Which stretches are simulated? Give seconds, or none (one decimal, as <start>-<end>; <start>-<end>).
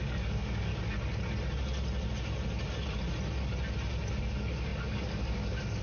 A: 0.0-0.7; 4.2-5.8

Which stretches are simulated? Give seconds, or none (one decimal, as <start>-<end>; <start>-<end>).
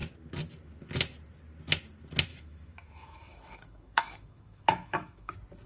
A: 2.3-5.3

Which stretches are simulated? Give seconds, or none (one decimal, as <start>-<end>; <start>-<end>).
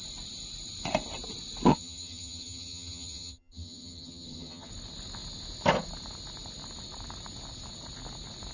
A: 1.7-4.7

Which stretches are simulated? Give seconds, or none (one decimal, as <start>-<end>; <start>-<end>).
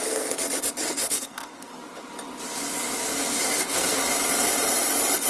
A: 0.0-0.4; 1.0-1.7; 3.3-4.0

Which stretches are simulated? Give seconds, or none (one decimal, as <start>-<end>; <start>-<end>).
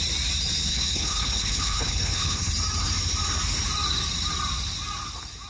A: 0.7-2.5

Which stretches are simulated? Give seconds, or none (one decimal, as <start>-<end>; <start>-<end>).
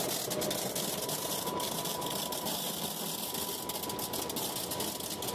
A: 1.0-2.7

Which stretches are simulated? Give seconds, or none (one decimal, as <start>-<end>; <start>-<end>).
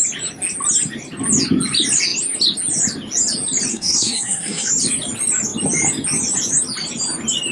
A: 3.7-4.7